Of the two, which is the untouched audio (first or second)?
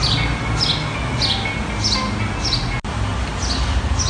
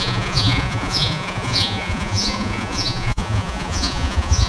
first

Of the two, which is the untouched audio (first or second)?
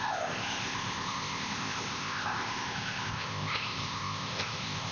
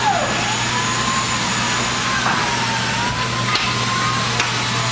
second